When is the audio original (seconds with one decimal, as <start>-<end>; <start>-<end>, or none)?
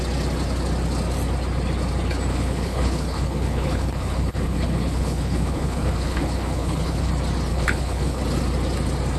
0.0-2.3; 7.1-7.5; 8.2-9.2